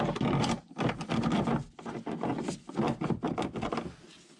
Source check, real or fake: real